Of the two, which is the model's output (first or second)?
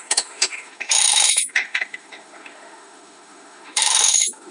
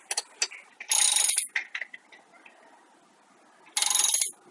first